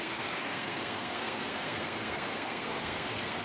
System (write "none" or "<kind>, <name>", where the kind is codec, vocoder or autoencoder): codec, SNAC